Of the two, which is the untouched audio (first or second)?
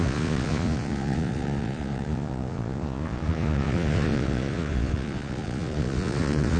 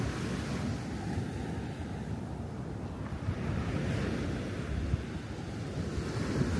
second